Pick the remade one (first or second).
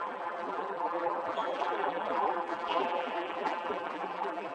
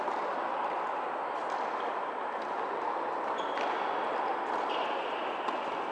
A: first